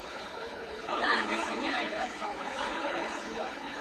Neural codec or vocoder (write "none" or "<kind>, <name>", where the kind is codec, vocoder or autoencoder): codec, HILCodec